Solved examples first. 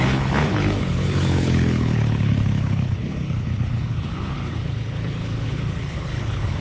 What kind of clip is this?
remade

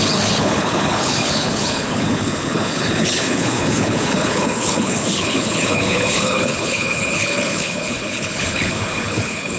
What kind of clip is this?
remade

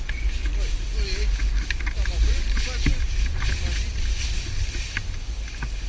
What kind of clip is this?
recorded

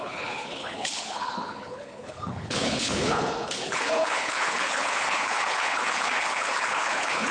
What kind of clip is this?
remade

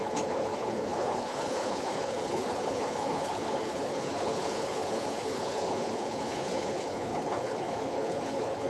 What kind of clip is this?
remade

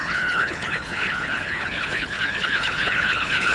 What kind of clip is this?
remade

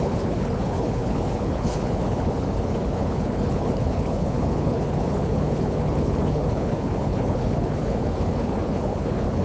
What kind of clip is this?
remade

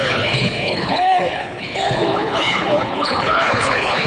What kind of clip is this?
remade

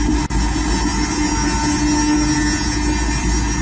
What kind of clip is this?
recorded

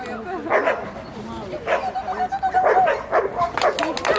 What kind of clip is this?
recorded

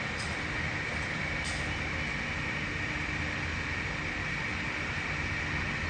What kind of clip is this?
recorded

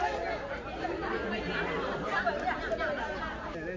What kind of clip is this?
recorded